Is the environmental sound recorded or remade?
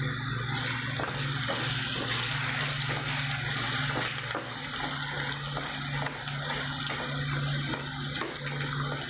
recorded